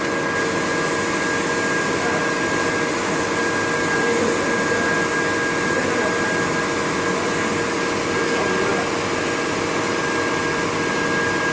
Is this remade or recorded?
recorded